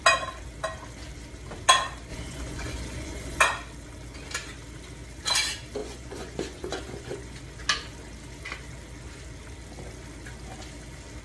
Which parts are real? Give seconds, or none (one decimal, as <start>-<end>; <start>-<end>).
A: 0.0-2.1; 3.4-5.8; 7.4-11.2